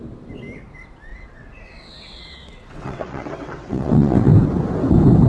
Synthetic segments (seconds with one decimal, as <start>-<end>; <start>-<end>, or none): 1.1-4.3